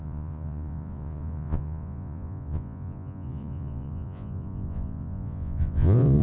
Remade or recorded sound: remade